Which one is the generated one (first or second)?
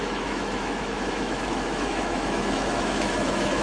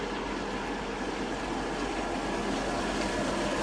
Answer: first